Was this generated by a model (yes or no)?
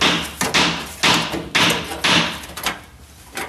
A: no